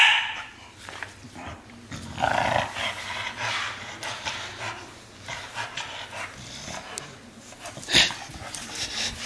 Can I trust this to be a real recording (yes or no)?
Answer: yes